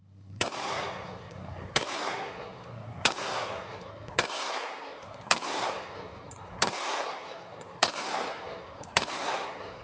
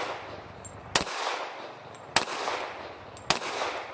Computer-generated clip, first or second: first